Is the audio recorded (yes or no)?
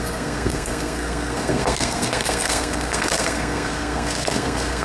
no